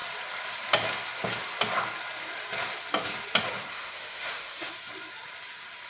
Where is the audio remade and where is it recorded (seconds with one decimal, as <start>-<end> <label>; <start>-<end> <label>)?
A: 0.0-3.7 recorded; 3.7-4.7 remade; 4.7-5.9 recorded